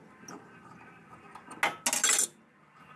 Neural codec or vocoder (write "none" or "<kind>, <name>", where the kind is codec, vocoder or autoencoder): none